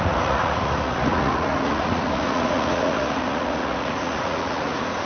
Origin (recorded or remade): remade